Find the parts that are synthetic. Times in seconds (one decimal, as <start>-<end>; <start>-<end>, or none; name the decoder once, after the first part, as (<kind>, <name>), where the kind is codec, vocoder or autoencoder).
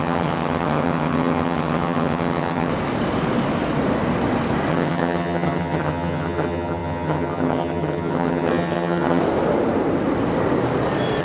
0.0-2.7 (vocoder, HiFi-GAN); 4.7-9.2